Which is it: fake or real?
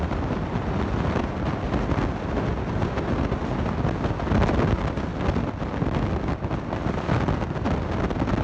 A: real